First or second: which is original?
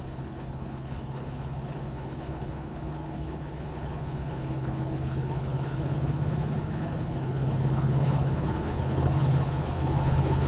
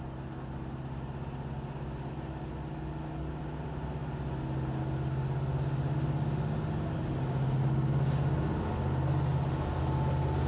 second